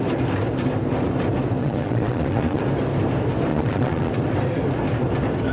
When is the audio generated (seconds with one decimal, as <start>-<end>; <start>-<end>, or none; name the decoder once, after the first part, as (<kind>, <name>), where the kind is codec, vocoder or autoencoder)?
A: 1.6-2.6 (vocoder, Vocos); 3.5-4.1